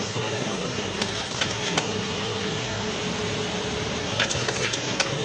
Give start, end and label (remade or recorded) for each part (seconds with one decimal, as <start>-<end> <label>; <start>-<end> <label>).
0.0-2.9 remade; 2.9-4.0 recorded; 4.0-5.2 remade